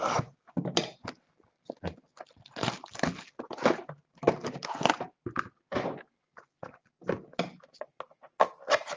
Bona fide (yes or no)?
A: yes